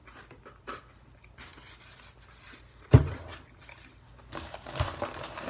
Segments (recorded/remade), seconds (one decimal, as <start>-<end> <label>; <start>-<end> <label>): 0.0-5.5 recorded